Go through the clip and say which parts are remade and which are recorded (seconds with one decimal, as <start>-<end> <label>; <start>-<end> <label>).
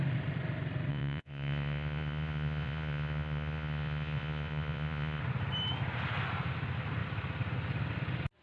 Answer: 0.0-0.9 recorded; 0.9-5.2 remade; 5.2-8.4 recorded